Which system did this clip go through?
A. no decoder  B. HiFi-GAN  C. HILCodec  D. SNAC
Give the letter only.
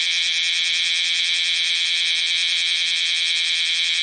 A